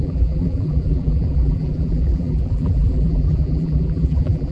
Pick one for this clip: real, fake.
fake